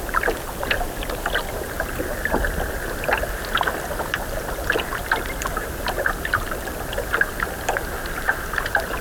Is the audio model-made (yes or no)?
no